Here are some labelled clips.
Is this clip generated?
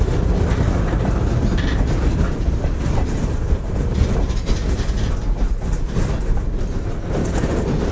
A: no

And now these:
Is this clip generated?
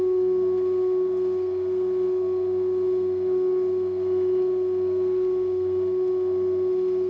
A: yes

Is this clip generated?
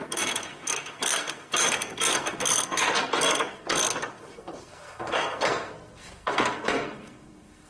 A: yes